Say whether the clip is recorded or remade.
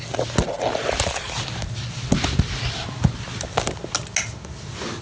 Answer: recorded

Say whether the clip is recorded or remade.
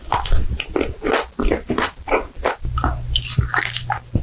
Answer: recorded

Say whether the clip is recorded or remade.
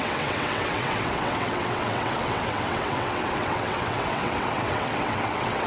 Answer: remade